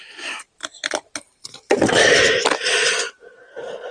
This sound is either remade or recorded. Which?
recorded